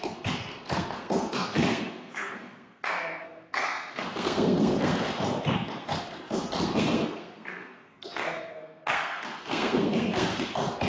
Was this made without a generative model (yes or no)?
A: no